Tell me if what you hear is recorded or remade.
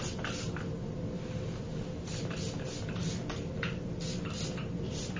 recorded